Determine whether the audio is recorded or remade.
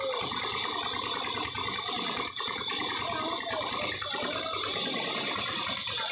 recorded